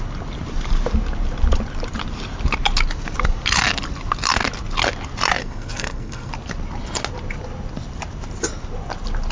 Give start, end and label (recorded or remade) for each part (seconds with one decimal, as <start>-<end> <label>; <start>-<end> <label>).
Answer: 0.0-5.4 recorded; 5.4-6.3 remade; 6.3-9.3 recorded